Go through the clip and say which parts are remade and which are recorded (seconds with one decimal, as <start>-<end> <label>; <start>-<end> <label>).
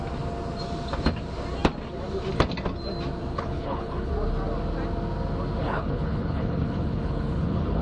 0.0-3.3 recorded; 3.3-4.1 remade; 4.1-5.6 recorded; 5.6-7.8 remade